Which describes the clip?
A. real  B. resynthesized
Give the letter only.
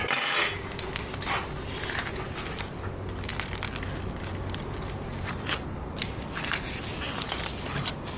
A